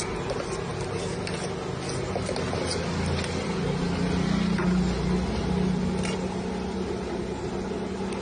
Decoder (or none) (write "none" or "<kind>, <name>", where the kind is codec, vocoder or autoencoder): none